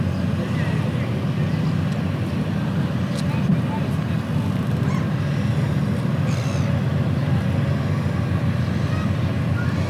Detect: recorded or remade recorded